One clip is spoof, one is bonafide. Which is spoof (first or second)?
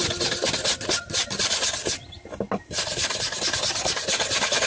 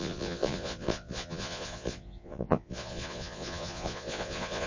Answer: second